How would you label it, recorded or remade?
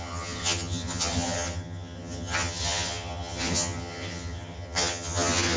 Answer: remade